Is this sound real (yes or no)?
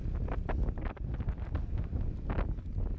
yes